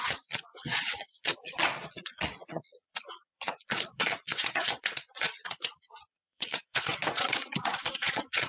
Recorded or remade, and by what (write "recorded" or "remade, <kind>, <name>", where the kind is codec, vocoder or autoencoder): remade, vocoder, Vocos